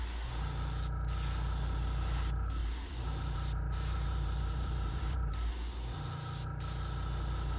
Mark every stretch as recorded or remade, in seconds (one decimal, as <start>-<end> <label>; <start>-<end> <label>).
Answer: 0.0-2.6 recorded; 2.6-5.5 remade; 5.5-7.6 recorded